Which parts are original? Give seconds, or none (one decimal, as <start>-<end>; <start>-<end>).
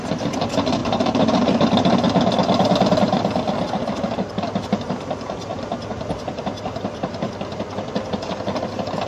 0.0-0.8; 1.9-5.5; 7.3-9.1